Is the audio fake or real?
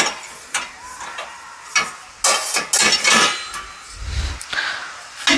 real